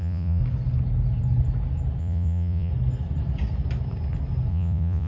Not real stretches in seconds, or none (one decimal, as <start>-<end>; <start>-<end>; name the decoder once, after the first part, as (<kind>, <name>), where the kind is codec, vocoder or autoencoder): 0.0-0.4 (vocoder, Vocos); 2.0-2.7; 4.5-5.1